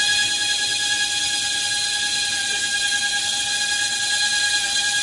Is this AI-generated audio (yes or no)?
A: no